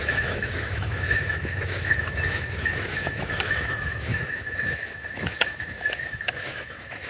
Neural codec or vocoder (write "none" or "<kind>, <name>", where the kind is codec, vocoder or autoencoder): autoencoder, DAC-VAE